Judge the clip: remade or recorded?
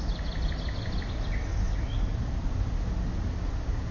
recorded